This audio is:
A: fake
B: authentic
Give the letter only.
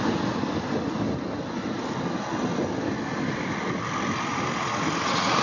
B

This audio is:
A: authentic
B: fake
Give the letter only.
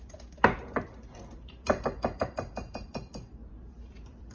B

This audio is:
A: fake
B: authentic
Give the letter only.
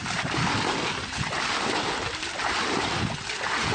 B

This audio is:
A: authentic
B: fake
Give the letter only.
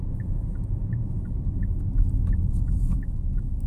A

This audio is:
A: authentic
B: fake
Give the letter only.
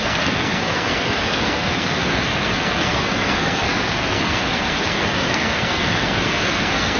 B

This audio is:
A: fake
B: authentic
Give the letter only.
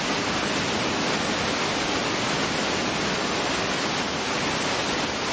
B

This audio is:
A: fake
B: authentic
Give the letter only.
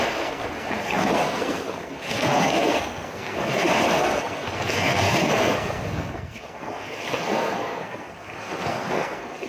A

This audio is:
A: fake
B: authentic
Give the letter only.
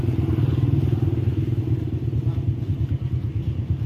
B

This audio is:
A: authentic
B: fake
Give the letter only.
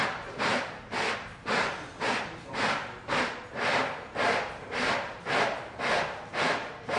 A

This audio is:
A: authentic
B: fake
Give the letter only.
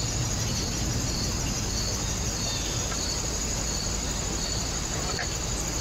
A